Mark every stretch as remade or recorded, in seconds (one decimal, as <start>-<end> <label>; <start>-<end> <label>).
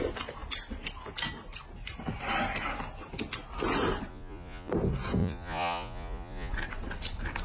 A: 0.0-4.1 recorded; 4.1-4.7 remade; 4.7-5.2 recorded; 5.2-6.5 remade; 6.5-7.4 recorded